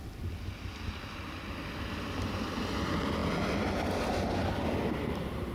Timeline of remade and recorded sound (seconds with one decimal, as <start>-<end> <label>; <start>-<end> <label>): 0.0-5.5 recorded